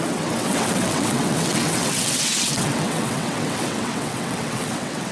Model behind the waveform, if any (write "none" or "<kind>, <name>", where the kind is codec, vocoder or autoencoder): vocoder, WaveNeXt